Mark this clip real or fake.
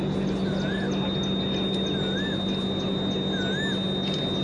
real